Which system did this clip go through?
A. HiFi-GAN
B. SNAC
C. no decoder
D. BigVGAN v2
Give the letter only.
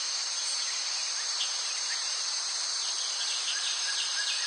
D